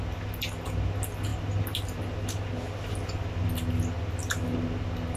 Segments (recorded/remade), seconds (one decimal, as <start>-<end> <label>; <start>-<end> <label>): 0.0-5.2 recorded